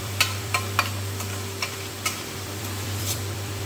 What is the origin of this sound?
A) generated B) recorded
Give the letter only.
A